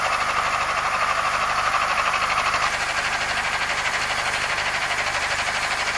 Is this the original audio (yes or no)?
yes